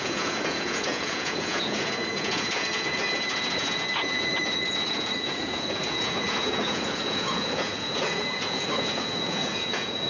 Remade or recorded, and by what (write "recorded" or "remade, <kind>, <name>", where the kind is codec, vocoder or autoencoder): remade, vocoder, Vocos